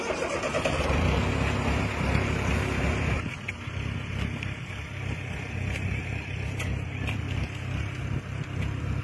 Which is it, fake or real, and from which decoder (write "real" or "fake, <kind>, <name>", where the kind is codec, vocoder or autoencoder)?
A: real